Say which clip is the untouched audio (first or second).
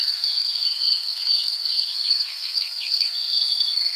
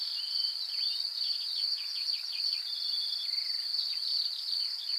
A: second